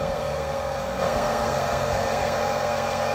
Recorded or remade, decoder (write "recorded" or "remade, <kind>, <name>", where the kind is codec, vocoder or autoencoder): remade, codec, SNAC